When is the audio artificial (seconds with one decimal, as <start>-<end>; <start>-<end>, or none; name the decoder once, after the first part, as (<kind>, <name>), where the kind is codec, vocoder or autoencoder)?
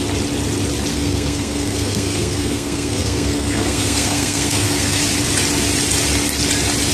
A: 0.9-5.0 (codec, SNAC)